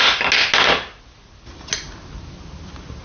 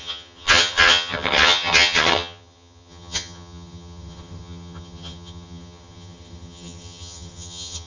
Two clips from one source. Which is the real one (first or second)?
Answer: first